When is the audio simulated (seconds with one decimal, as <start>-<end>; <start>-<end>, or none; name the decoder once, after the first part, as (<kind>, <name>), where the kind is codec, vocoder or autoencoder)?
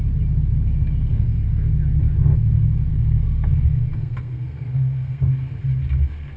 1.1-1.7 (codec, SNAC); 2.9-5.3